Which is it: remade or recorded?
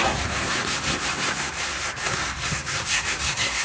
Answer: remade